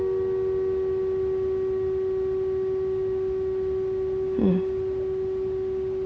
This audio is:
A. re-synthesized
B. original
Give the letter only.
B